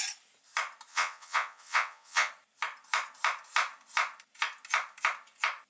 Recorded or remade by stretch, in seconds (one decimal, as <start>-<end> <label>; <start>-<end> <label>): 0.0-0.9 recorded; 0.9-2.3 remade; 2.3-5.7 recorded